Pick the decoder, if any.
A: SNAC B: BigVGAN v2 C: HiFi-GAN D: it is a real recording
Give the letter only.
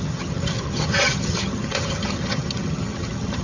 C